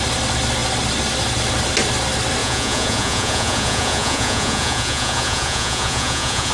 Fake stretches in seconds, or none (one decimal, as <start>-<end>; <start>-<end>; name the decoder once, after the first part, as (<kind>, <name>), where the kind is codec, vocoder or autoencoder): 2.4-6.5 (vocoder, Vocos)